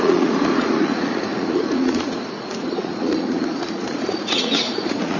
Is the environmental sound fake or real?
fake